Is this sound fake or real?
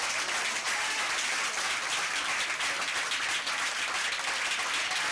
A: real